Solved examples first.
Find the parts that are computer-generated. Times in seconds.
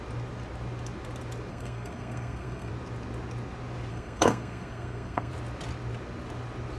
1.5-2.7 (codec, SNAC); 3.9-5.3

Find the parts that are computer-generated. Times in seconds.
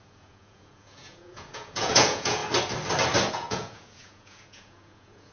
0.0-2.4 (vocoder, Vocos); 3.3-5.3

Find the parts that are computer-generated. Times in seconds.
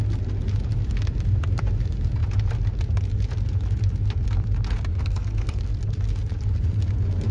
4.9-5.6 (codec, SNAC)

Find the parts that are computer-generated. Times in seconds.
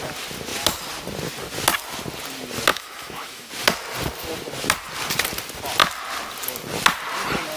2.7-3.5 (autoencoder, DAC-VAE)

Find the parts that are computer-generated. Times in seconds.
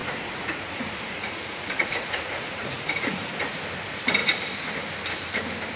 0.0-3.5 (vocoder, Vocos)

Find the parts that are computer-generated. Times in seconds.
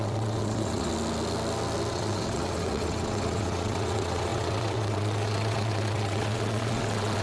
0.0-0.9 (vocoder, WaveNeXt); 1.9-7.2